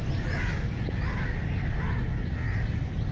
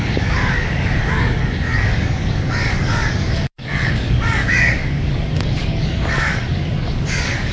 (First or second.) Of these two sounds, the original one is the first